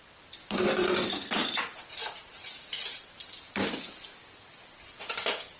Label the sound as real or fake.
real